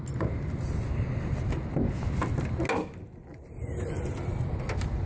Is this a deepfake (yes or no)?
no